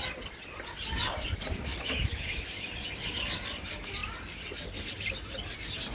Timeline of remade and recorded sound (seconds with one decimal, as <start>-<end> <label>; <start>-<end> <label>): 0.0-1.7 recorded; 1.7-2.7 remade; 2.7-5.9 recorded